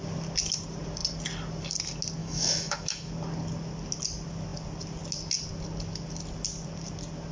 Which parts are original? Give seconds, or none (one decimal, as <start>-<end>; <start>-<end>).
0.0-2.2; 3.1-7.3